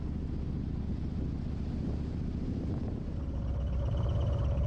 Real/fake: real